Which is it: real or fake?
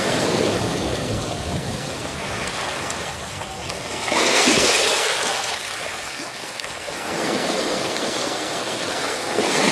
fake